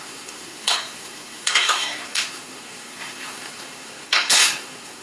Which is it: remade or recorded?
remade